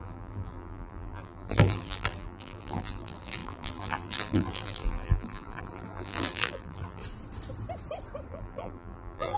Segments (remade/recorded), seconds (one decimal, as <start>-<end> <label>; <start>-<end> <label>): 0.0-7.0 remade; 7.0-8.3 recorded; 8.3-9.4 remade